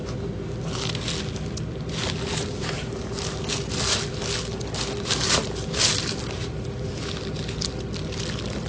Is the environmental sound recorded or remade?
recorded